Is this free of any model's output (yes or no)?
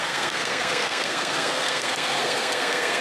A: no